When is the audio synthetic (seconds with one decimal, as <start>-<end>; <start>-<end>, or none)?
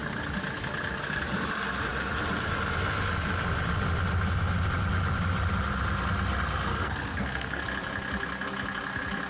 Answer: 6.7-7.6